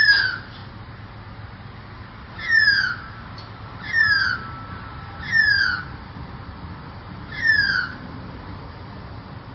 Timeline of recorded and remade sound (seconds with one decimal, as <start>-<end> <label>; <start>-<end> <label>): 0.0-5.5 recorded; 5.5-9.5 remade